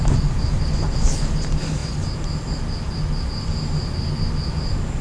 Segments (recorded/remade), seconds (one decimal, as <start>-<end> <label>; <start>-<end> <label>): 0.0-5.0 recorded